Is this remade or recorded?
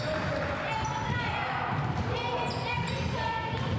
recorded